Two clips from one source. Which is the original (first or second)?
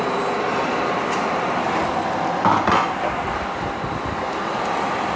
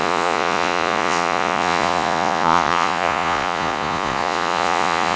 first